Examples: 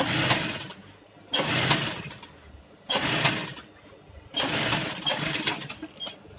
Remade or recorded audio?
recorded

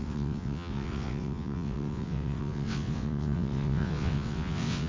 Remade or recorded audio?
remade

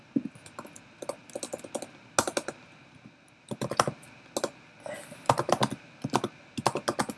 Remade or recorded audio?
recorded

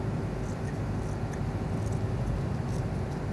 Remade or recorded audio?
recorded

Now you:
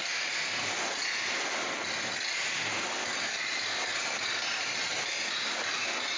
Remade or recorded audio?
recorded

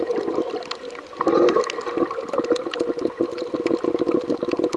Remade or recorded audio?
recorded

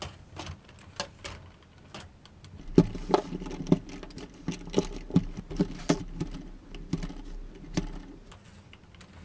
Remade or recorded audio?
recorded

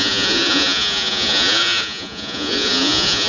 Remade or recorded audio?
remade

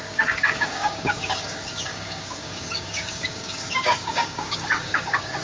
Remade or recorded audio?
remade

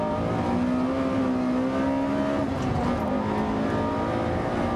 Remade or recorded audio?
recorded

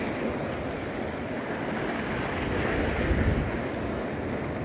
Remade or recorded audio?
recorded